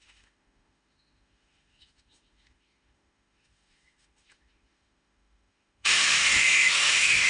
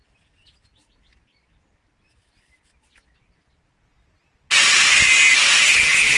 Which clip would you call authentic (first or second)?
second